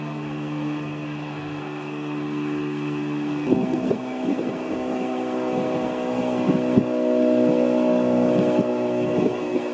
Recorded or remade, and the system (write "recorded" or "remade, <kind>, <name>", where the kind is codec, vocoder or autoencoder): remade, codec, SNAC